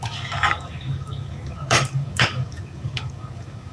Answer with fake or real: fake